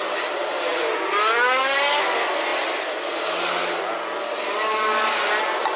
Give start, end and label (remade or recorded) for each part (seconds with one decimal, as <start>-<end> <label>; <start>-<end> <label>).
0.0-5.8 recorded